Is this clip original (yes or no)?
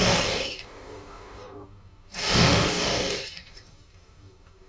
no